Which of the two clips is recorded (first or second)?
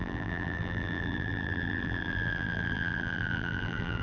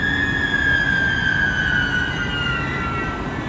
second